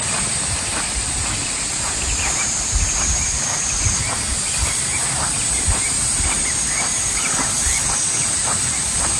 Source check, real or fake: real